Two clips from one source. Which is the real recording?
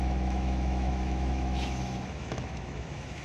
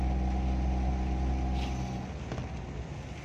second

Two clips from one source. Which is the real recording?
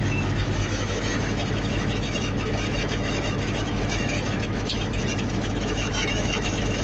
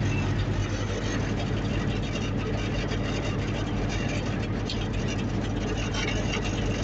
second